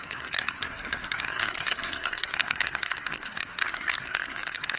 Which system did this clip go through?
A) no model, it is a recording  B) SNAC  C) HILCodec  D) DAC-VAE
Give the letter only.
B